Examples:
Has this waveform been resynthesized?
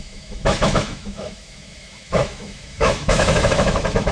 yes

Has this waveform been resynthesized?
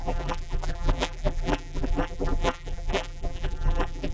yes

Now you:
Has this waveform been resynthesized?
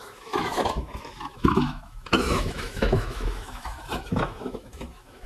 yes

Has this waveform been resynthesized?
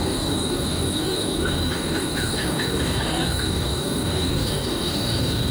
yes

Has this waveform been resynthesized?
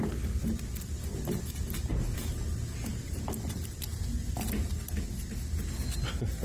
no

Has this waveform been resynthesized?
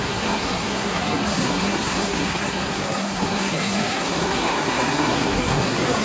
yes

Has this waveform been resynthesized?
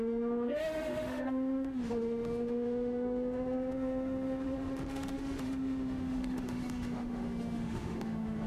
yes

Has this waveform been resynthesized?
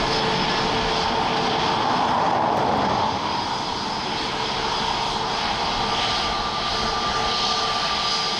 no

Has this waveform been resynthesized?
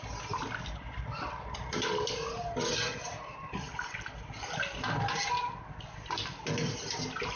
yes